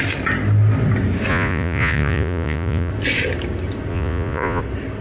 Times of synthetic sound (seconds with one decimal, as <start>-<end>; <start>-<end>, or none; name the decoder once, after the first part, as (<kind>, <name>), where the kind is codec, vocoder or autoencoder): 1.3-2.9 (vocoder, Vocos); 3.9-4.6